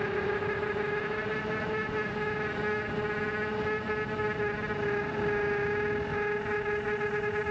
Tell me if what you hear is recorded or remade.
recorded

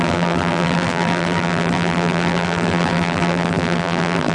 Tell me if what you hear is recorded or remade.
remade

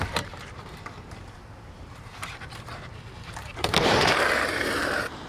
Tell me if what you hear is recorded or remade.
remade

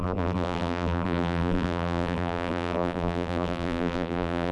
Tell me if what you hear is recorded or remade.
remade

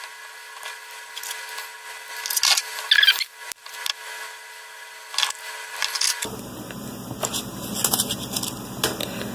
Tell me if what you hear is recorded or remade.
recorded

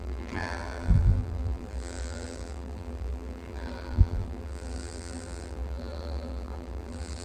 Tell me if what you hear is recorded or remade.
remade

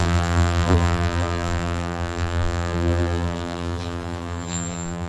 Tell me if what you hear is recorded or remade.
remade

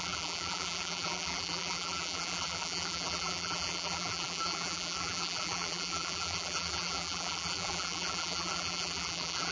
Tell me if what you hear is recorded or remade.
remade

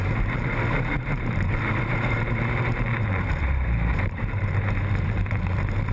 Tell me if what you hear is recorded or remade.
remade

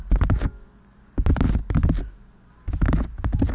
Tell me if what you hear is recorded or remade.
recorded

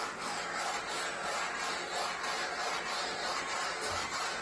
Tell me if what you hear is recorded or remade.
recorded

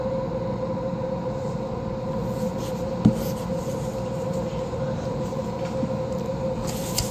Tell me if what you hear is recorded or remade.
recorded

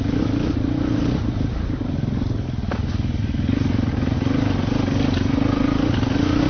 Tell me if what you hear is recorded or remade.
recorded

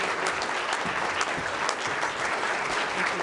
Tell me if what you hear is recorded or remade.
recorded